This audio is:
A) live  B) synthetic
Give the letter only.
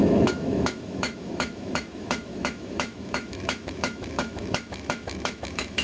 B